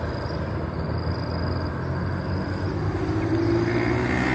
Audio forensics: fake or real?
real